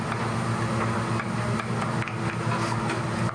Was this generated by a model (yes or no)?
no